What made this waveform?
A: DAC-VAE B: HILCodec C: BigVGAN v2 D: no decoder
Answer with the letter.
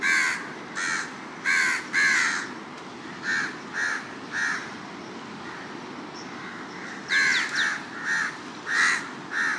D